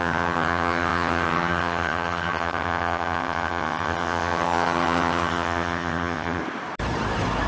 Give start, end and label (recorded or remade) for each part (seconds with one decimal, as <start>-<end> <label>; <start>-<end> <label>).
0.0-6.4 remade; 6.4-7.5 recorded